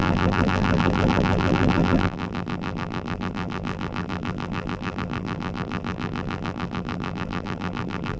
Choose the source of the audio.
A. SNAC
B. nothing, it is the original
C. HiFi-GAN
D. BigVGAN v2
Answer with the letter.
D